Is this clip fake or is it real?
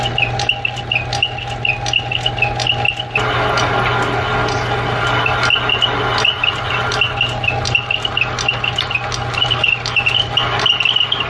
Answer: real